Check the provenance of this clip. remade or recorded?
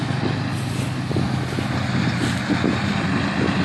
recorded